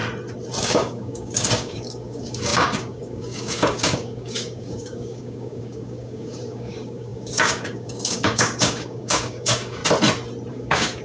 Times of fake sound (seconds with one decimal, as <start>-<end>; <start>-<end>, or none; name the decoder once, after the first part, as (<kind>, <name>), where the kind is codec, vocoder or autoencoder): 0.6-9.8 (codec, DAC); 10.5-11.0